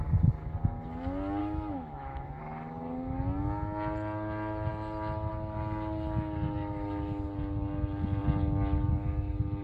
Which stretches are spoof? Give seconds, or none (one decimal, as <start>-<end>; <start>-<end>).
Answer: 1.4-2.4